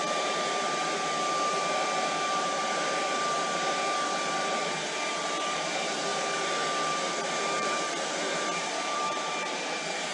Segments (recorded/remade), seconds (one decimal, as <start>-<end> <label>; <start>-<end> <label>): 0.0-6.1 remade; 6.1-6.9 recorded; 6.9-10.1 remade